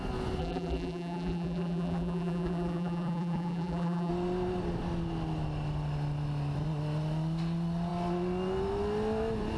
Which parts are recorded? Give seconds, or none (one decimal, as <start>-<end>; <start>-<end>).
0.0-0.4; 4.1-9.6